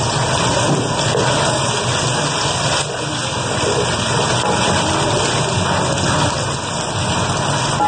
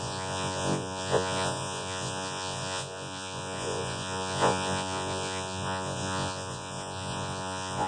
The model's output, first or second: second